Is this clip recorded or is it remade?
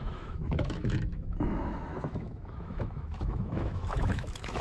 remade